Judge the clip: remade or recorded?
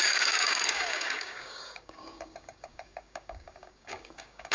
remade